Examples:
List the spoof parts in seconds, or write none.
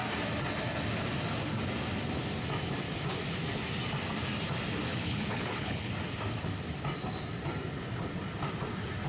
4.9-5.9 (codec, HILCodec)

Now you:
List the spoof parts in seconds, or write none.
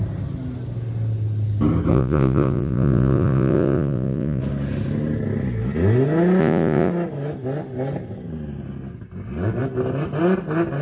1.9-4.4 (vocoder, Vocos); 6.4-6.9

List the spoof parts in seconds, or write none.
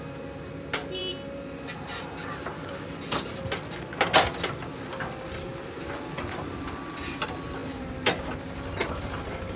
none